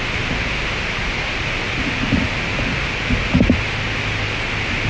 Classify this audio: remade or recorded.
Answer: recorded